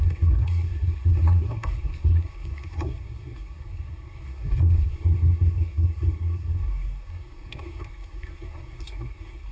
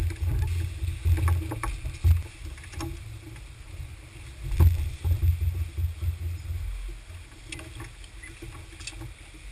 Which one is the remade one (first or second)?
first